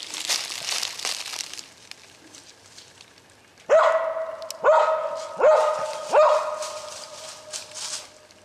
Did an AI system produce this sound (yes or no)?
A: no